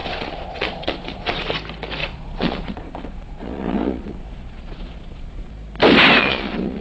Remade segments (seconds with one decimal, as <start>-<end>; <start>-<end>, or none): 0.0-1.5; 2.0-5.5; 6.2-6.8

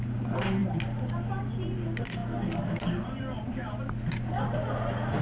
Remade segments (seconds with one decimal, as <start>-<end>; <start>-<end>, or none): none

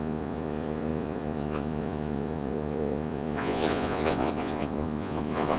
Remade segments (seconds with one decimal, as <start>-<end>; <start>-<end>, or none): 0.0-5.6

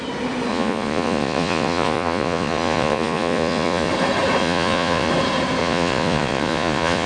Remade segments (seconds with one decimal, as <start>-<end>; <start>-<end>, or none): 0.5-3.9; 4.4-5.1; 5.6-7.1

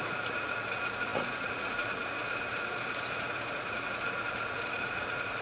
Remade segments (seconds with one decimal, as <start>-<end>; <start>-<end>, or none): 0.0-5.4

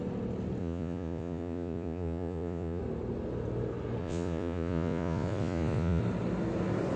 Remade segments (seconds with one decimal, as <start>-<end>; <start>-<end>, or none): 0.6-2.8; 4.0-6.0